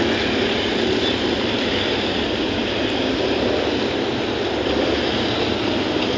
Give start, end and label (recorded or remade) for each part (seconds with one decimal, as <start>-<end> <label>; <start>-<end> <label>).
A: 0.0-6.2 recorded